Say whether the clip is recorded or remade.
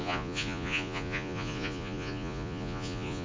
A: remade